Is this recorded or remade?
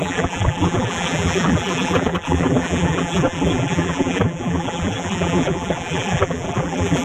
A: remade